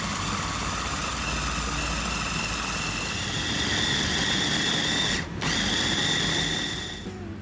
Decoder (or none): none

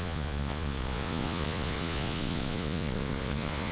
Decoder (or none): vocoder, Vocos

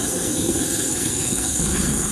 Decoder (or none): codec, SNAC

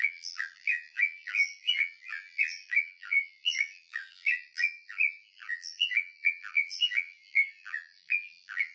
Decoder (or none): vocoder, BigVGAN v2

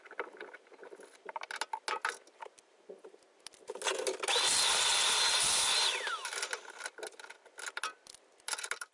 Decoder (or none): none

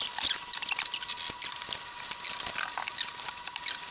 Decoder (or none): none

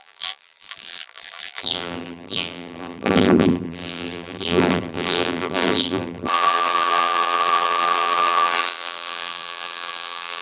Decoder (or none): vocoder, BigVGAN v2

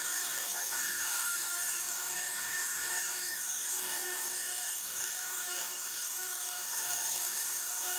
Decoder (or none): codec, DAC